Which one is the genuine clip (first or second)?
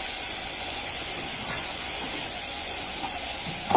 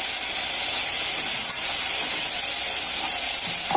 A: second